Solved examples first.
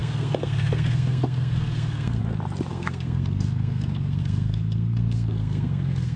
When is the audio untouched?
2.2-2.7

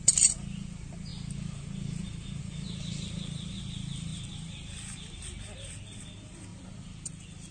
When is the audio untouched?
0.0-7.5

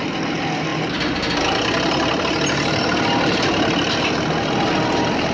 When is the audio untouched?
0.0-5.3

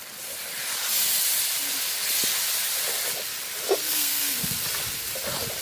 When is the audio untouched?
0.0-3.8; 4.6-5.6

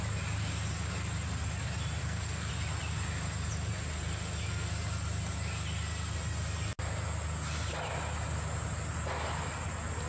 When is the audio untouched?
0.0-2.0; 2.5-10.1

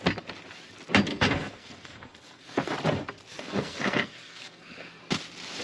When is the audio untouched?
0.0-1.1; 2.7-3.3; 5.0-5.6